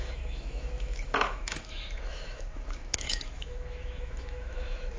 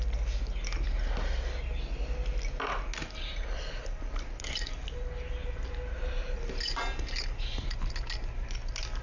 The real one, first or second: second